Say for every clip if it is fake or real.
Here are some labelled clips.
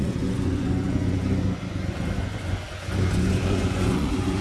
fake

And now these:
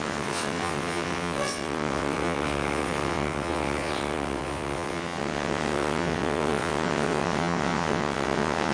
fake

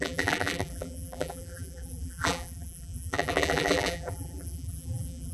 fake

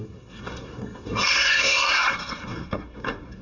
fake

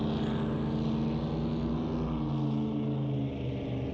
real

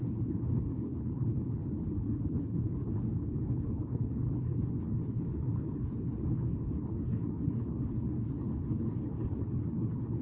fake